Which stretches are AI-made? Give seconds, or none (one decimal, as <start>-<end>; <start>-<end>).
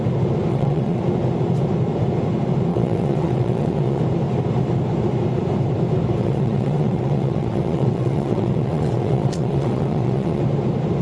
0.5-1.0; 2.7-4.0; 6.2-10.4